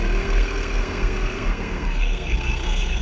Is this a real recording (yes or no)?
no